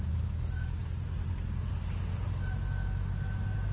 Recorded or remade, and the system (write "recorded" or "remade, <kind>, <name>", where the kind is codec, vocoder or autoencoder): recorded